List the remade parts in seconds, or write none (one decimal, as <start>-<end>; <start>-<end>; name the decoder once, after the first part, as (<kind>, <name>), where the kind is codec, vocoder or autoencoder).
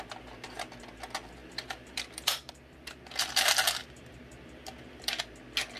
1.4-2.5 (vocoder, BigVGAN v2); 3.8-5.1